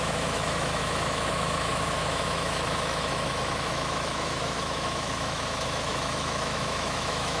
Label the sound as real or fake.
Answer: fake